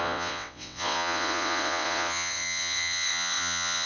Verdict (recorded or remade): remade